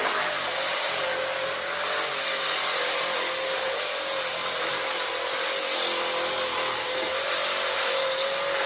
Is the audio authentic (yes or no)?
yes